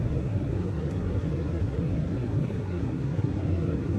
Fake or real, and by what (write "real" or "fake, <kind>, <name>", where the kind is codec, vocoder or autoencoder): fake, codec, SNAC